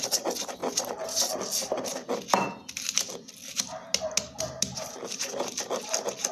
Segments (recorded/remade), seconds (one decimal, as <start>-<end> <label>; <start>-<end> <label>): 0.0-6.3 recorded